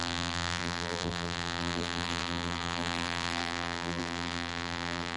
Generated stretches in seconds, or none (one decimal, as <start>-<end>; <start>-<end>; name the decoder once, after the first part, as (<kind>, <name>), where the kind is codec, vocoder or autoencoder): 0.0-5.2 (vocoder, BigVGAN v2)